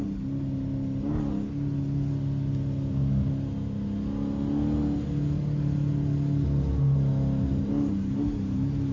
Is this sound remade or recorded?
recorded